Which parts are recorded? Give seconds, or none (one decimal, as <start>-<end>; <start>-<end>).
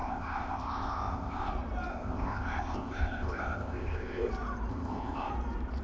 1.5-1.9; 4.3-4.7; 5.3-5.8